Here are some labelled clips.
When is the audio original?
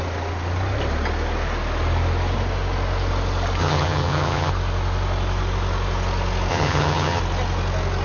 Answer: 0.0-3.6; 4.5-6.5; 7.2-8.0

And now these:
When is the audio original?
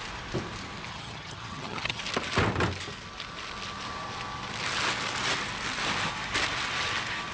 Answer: 0.0-0.9; 2.0-7.3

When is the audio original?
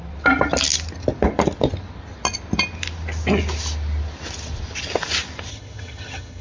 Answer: 0.0-5.5